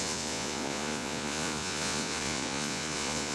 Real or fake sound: fake